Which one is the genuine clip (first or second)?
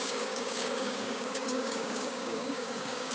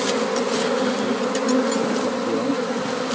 second